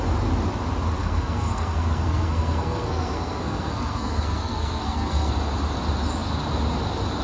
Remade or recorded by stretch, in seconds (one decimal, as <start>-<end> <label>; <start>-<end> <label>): 0.0-1.0 recorded; 1.0-5.3 remade; 5.3-7.2 recorded